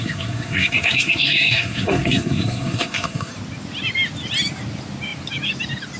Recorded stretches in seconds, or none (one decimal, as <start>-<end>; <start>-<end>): 3.3-6.0

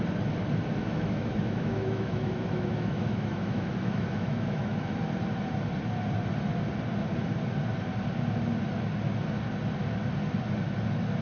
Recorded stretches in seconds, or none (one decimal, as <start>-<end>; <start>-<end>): 0.0-0.8; 5.0-11.2

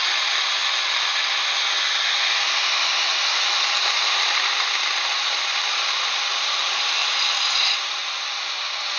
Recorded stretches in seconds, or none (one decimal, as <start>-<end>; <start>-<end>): 0.0-3.3; 8.0-9.0

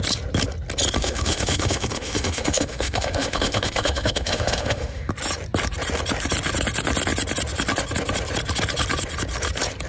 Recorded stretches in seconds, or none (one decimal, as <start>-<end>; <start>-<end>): 0.0-1.0; 5.1-9.9

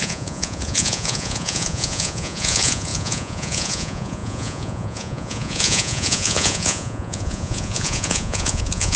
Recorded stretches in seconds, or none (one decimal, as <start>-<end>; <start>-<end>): none